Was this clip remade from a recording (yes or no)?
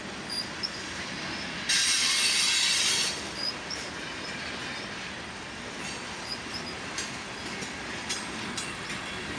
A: no